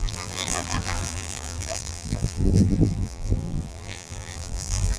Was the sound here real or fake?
fake